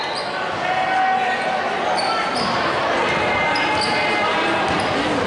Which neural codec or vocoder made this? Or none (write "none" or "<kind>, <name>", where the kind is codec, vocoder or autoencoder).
none